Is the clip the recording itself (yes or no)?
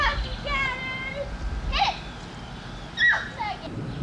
yes